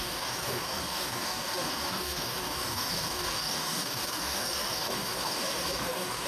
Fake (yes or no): yes